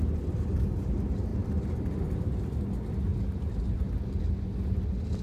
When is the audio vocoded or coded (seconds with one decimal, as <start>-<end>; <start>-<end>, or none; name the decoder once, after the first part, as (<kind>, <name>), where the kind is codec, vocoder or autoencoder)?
3.1-4.2 (vocoder, BigVGAN v2)